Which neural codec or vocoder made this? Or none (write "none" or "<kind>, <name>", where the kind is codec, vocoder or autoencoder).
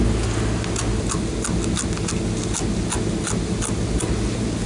none